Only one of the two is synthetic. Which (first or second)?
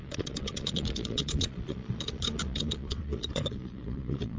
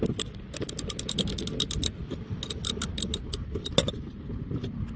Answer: first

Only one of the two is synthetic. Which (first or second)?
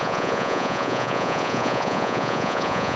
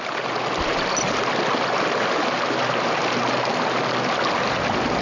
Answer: first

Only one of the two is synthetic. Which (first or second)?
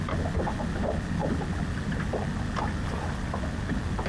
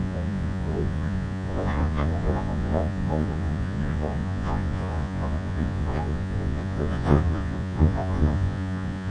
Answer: second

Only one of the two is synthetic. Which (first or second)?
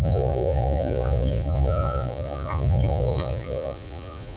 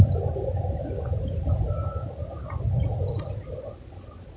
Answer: first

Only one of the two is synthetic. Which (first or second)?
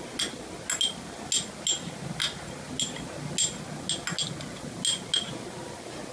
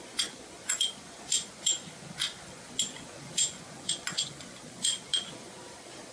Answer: second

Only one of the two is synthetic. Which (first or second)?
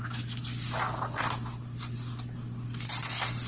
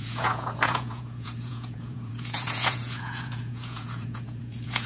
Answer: second